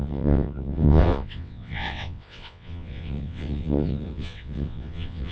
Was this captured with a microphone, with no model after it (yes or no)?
no